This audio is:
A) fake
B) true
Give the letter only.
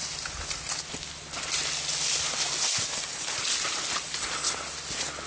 B